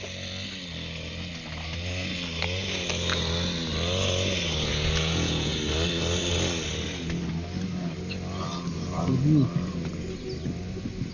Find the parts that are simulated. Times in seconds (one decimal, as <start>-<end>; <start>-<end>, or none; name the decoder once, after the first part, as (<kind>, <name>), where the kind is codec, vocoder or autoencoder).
4.7-5.6 (vocoder, Vocos)